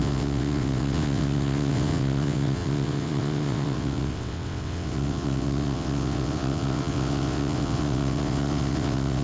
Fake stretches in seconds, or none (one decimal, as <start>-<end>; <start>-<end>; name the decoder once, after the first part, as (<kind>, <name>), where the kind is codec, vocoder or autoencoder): 0.0-9.2 (vocoder, WaveNeXt)